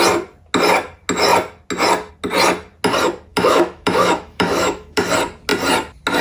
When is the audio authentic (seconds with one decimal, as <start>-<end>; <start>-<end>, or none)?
0.0-3.3; 5.1-6.2